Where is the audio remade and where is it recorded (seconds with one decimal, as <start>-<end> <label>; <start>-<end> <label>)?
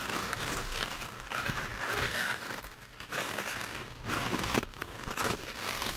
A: 0.0-6.0 remade